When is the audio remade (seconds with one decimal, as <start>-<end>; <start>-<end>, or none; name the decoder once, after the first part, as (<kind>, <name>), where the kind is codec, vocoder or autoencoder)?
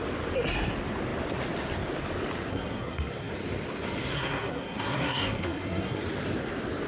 2.5-3.3 (codec, SNAC); 4.1-6.0